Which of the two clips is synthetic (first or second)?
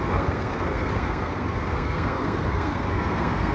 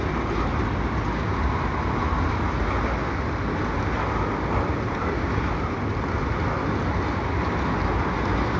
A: first